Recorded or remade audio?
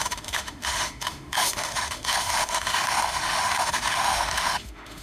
remade